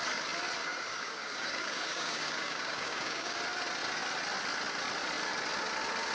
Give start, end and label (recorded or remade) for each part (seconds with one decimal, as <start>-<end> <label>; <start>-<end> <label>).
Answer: 0.0-0.6 recorded; 0.6-3.4 remade; 3.4-6.1 recorded